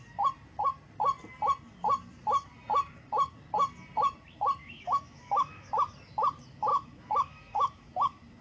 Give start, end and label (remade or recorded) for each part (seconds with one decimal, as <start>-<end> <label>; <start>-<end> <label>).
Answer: 0.0-4.6 recorded; 4.6-5.7 remade; 5.7-6.7 recorded; 6.7-7.9 remade; 7.9-8.4 recorded